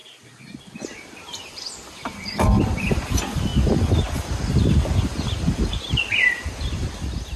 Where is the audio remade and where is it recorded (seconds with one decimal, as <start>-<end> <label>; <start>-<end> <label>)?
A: 0.0-2.9 remade; 2.9-7.4 recorded